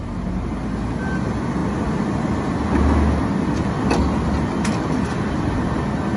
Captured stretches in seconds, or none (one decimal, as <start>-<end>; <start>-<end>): 0.0-6.2